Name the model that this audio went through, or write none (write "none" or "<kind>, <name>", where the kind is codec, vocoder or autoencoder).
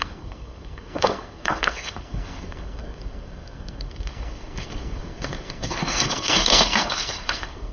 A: codec, SNAC